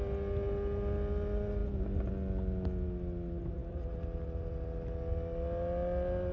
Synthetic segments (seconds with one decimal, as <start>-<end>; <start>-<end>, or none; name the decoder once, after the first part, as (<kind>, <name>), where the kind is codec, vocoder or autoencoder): none